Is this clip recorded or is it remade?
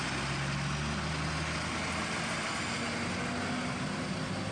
recorded